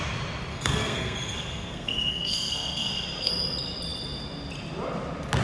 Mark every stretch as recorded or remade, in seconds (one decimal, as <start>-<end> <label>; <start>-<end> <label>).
0.0-0.5 recorded; 0.5-3.3 remade; 3.3-5.4 recorded